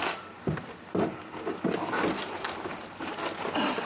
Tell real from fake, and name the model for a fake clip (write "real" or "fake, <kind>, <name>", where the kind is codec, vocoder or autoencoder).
real